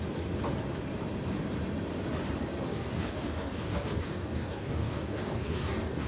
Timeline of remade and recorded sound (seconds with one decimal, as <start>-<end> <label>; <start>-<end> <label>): 0.0-2.7 recorded; 2.7-6.1 remade